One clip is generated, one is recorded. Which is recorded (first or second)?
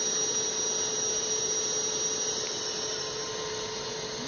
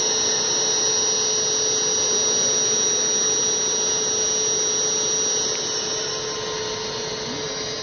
second